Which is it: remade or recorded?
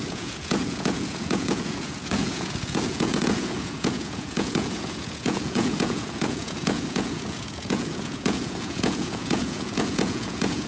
remade